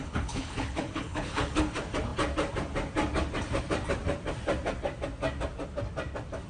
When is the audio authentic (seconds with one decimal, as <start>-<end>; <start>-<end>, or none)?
1.6-6.5